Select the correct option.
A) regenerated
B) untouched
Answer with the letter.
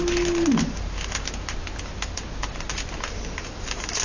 B